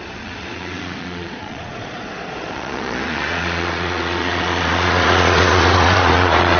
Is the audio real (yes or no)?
no